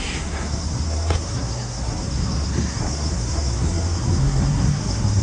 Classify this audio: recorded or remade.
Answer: remade